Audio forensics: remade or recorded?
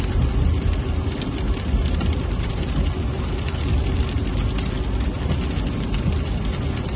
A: recorded